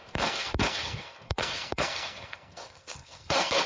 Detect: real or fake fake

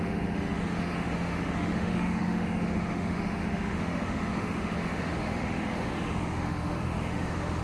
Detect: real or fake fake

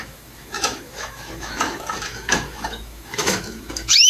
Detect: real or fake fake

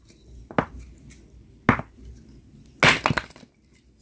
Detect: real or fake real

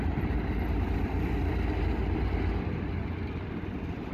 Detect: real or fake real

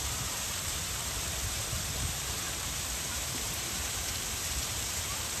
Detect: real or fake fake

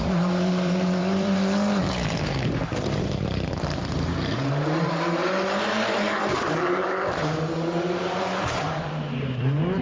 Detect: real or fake fake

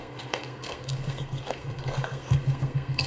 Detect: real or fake fake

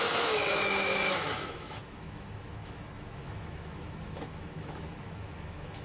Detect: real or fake fake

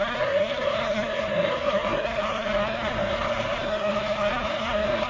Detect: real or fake fake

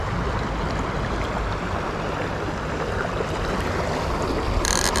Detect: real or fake real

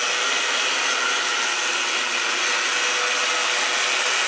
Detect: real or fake real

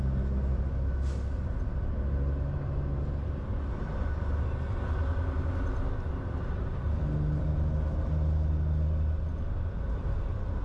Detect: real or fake real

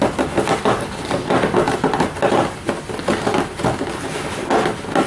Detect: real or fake real